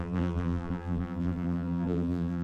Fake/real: fake